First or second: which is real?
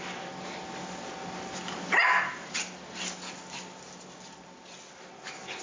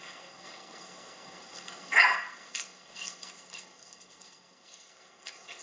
first